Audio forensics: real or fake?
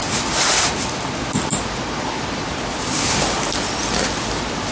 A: real